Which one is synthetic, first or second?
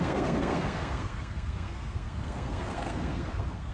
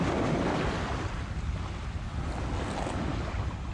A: first